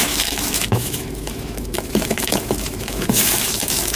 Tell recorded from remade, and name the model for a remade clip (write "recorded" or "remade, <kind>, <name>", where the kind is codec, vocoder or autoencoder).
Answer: remade, autoencoder, DAC-VAE